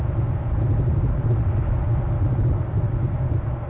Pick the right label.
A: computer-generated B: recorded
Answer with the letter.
B